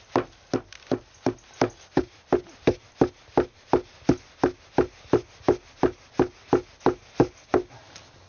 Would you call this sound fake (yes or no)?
no